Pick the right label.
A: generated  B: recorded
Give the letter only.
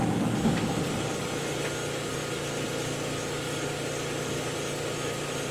B